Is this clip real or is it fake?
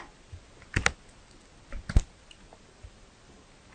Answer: real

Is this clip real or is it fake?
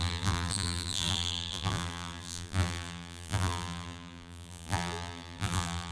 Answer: fake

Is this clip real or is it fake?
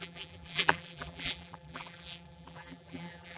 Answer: fake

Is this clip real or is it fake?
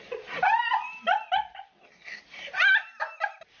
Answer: real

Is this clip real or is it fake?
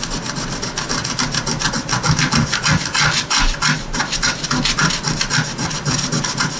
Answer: real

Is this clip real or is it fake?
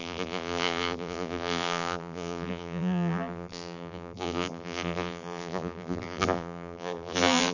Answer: fake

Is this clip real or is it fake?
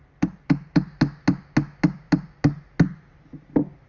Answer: real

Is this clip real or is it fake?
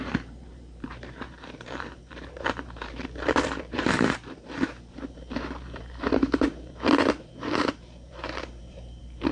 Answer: fake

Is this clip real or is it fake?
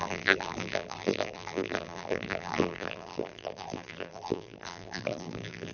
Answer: fake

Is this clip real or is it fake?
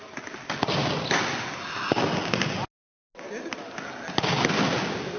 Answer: real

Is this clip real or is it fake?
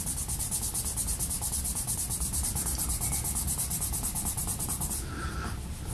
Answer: real